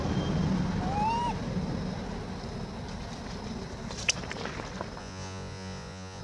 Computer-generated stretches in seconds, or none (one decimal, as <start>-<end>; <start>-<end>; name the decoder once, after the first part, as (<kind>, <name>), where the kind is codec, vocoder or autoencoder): 5.0-6.2 (vocoder, Vocos)